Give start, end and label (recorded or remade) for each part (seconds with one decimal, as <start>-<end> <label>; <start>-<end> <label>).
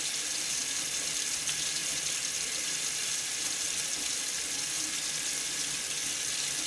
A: 0.0-0.6 recorded; 0.6-1.4 remade; 1.4-1.8 recorded; 1.8-5.8 remade; 5.8-6.7 recorded